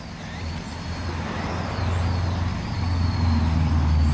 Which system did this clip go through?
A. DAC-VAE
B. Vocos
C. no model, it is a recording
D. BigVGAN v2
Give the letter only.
C